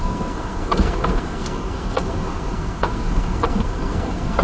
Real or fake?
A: fake